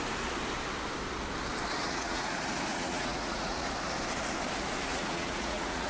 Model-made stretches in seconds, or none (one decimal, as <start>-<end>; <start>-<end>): 1.8-2.3; 2.7-3.7; 4.9-5.9